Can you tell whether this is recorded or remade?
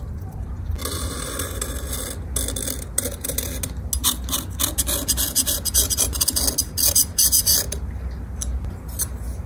recorded